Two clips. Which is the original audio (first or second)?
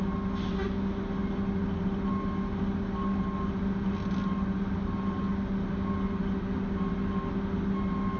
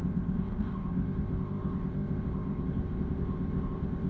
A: first